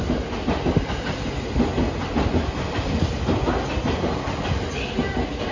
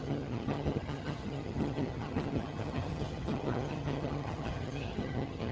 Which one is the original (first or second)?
first